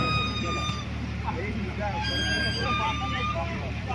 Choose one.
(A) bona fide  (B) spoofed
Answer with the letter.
B